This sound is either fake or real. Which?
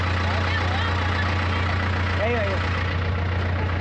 real